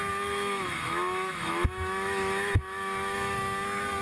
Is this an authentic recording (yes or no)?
no